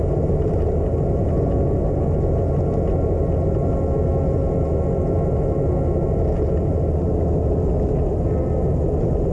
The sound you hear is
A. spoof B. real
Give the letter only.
B